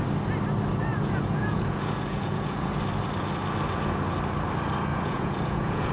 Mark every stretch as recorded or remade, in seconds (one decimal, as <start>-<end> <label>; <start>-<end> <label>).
0.0-0.9 recorded; 0.9-2.7 remade; 2.7-4.9 recorded; 4.9-5.9 remade